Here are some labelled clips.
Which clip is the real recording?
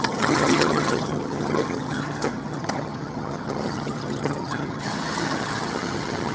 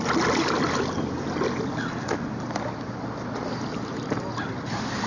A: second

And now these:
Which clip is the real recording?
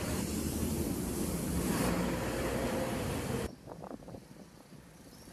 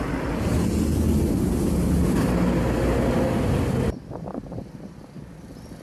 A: second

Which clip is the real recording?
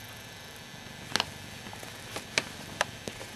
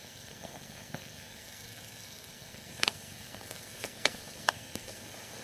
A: first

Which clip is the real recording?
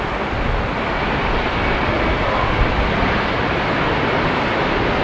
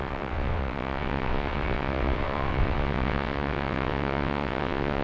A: first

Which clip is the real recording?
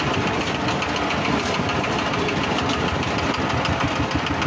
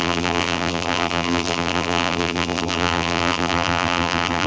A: first